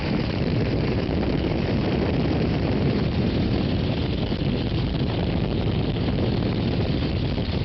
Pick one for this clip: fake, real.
fake